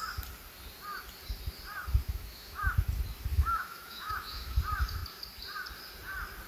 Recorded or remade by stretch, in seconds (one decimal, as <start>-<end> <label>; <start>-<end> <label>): 0.0-2.0 recorded; 2.0-2.6 remade; 2.6-3.3 recorded; 3.3-4.6 remade; 4.6-6.5 recorded